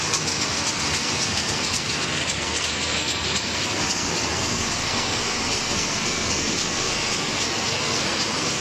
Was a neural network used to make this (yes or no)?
yes